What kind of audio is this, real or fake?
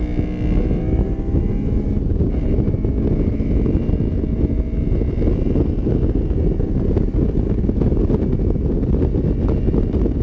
real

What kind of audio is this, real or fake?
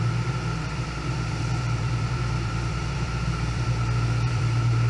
fake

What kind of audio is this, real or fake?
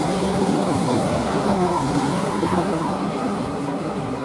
fake